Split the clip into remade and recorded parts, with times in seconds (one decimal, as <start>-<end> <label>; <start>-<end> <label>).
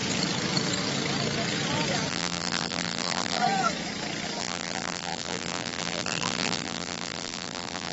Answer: 0.0-2.1 recorded; 2.1-3.4 remade; 3.4-4.4 recorded; 4.4-7.9 remade